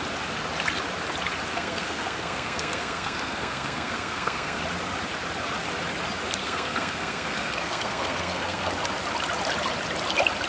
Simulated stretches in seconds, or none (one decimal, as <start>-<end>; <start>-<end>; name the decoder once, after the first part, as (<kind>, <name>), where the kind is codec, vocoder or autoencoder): 1.5-4.6 (codec, SNAC); 6.4-8.7